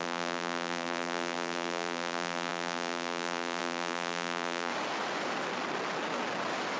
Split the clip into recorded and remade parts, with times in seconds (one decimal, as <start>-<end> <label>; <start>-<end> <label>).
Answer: 0.0-4.7 remade; 4.7-6.8 recorded